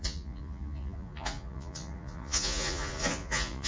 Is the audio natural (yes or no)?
no